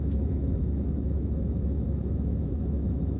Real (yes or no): no